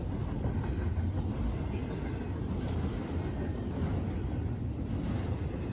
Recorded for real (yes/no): yes